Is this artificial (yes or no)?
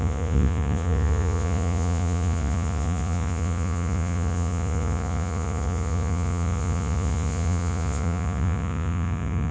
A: yes